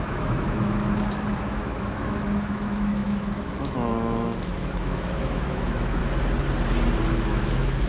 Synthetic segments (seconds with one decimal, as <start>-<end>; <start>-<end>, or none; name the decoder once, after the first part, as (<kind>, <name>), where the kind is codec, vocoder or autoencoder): 0.0-6.0 (autoencoder, DAC-VAE); 7.1-7.9